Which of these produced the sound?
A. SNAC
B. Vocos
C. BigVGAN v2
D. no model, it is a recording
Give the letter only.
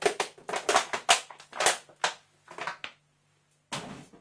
D